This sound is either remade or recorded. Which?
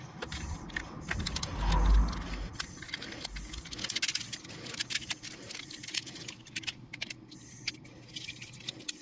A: recorded